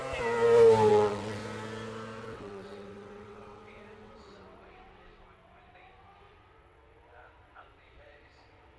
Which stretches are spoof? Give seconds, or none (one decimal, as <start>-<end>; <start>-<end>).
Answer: 0.9-1.4; 2.2-8.8